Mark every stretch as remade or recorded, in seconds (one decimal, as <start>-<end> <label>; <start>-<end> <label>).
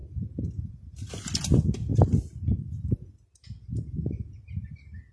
0.0-5.1 recorded